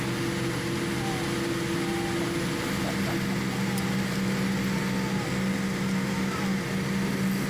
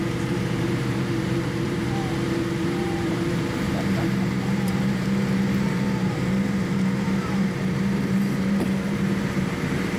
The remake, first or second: second